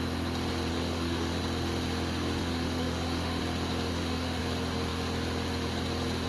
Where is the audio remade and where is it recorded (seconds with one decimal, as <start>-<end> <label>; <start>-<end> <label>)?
0.0-0.7 recorded; 0.7-1.4 remade; 1.4-2.4 recorded; 2.4-3.4 remade; 3.4-3.9 recorded; 3.9-4.4 remade; 4.4-6.3 recorded